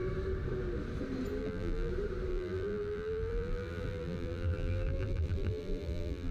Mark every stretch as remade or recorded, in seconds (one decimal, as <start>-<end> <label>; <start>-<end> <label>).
0.0-1.4 recorded; 1.4-1.9 remade; 1.9-2.3 recorded; 2.3-6.3 remade